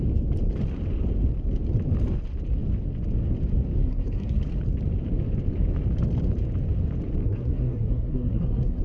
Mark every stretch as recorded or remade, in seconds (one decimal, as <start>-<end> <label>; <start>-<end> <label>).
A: 0.0-3.8 recorded; 3.8-4.4 remade; 4.4-7.2 recorded; 7.2-8.8 remade

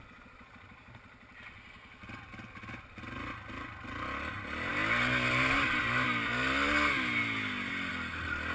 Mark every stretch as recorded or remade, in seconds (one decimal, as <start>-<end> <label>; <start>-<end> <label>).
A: 0.0-8.5 recorded

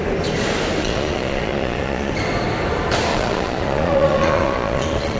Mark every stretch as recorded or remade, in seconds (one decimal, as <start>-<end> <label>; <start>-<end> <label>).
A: 0.0-0.8 recorded; 0.8-2.1 remade; 2.1-3.1 recorded; 3.1-5.2 remade

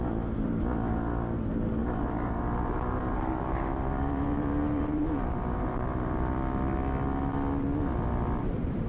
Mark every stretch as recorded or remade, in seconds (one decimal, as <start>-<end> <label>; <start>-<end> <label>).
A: 0.0-1.8 recorded; 1.8-6.3 remade; 6.3-8.9 recorded

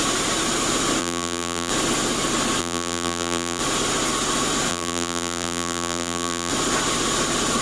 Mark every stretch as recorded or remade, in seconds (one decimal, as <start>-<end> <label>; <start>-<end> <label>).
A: 0.0-1.0 recorded; 1.0-1.7 remade; 1.7-2.6 recorded; 2.6-3.6 remade; 3.6-4.7 recorded; 4.7-6.5 remade; 6.5-7.6 recorded

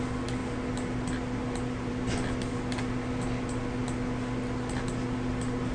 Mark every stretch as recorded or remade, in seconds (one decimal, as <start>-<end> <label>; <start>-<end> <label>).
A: 0.0-5.7 recorded

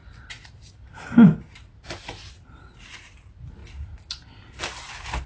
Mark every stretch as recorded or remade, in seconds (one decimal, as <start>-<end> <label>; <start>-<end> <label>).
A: 0.0-5.3 recorded

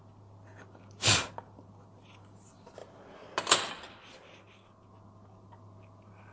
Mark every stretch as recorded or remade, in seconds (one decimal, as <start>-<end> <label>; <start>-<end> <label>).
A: 0.0-6.3 recorded